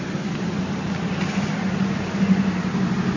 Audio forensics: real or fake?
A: real